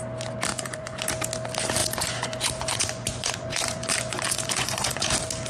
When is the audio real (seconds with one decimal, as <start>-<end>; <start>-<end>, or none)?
0.0-0.5; 1.0-1.8; 5.1-5.5